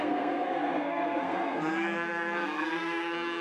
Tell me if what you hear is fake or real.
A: fake